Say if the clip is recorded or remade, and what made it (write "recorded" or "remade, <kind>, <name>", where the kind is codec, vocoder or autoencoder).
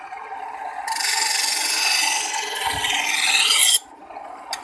recorded